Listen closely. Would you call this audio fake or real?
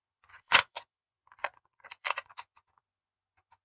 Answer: fake